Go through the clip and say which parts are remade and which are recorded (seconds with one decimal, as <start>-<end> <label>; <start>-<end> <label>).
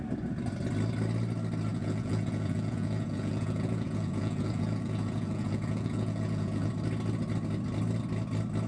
0.0-1.7 recorded; 1.7-6.7 remade; 6.7-8.7 recorded